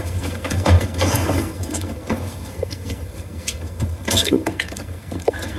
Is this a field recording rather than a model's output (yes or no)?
no